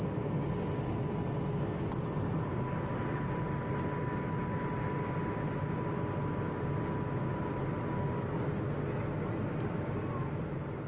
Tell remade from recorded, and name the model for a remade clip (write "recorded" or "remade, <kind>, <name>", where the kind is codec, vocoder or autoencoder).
recorded